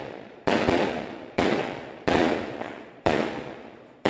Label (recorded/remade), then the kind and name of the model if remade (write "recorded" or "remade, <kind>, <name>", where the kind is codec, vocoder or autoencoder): remade, vocoder, Vocos